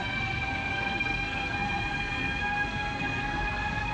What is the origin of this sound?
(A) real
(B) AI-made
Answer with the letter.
B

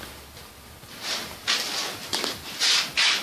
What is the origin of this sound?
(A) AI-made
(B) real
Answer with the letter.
B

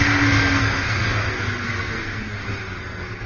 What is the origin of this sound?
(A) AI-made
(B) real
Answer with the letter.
A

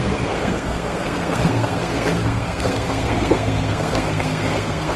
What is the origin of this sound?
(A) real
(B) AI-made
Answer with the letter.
B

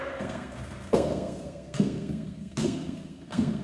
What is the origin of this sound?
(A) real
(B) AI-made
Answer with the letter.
B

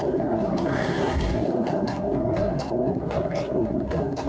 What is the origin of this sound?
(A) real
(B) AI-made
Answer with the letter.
B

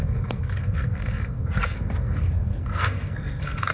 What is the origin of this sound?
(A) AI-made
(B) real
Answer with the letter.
A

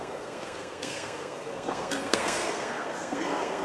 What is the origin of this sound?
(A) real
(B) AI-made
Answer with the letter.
B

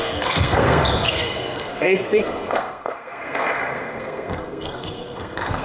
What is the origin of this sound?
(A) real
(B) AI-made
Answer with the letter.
B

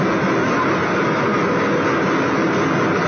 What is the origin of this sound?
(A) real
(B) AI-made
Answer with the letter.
A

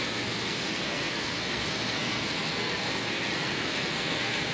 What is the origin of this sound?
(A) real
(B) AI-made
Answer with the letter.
B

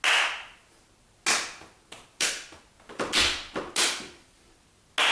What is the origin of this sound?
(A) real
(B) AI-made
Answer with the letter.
A